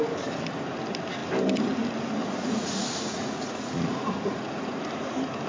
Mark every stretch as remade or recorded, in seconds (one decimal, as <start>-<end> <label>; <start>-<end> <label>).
0.0-2.2 recorded; 2.2-4.8 remade; 4.8-5.5 recorded